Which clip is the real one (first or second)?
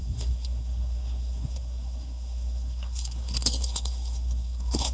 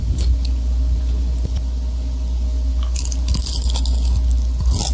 second